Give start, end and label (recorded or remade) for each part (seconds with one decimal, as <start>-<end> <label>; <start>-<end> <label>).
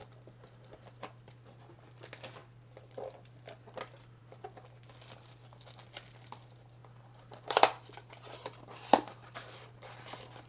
0.0-2.4 recorded; 2.4-4.2 remade; 4.2-6.8 recorded; 6.8-10.0 remade; 10.0-10.5 recorded